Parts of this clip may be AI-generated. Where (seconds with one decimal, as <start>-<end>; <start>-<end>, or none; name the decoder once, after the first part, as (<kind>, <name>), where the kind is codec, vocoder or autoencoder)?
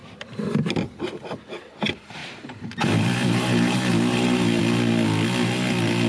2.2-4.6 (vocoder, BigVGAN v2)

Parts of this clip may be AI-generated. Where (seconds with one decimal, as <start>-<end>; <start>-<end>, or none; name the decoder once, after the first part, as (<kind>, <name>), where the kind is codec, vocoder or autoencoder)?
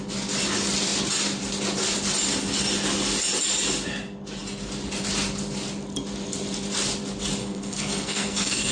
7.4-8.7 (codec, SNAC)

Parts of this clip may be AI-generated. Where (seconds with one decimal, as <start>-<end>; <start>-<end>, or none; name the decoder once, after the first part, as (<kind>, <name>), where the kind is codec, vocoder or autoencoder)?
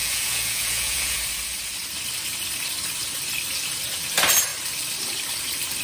0.0-1.2 (vocoder, Vocos)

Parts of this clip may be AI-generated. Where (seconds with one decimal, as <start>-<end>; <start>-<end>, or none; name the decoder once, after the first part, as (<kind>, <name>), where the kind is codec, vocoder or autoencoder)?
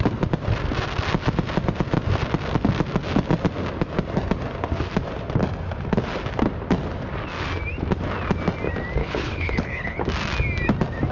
9.0-10.0 (codec, HILCodec)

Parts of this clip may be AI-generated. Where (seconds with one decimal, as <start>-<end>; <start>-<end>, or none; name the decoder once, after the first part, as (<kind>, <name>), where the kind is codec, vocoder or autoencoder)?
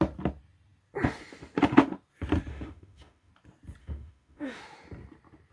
2.5-3.3 (autoencoder, DAC-VAE); 3.8-4.6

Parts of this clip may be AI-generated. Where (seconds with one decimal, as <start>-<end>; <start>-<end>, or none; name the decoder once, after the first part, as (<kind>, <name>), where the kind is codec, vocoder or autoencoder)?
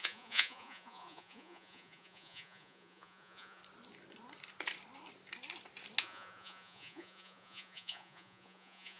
0.0-3.6 (vocoder, Vocos); 6.0-9.0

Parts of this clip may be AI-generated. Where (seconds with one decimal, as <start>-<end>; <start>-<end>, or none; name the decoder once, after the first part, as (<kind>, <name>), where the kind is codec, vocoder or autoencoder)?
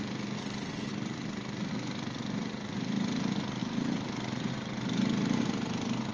none